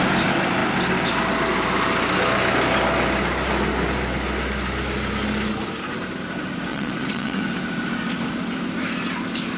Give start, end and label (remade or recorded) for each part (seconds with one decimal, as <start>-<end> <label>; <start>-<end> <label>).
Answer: 0.0-6.7 recorded; 6.7-7.4 remade; 7.4-9.6 recorded